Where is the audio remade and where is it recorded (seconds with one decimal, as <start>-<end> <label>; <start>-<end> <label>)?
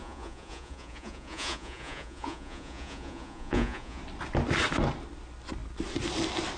0.0-4.0 remade; 4.0-6.6 recorded